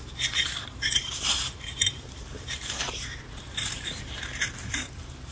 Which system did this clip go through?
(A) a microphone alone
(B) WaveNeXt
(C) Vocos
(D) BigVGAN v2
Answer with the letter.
D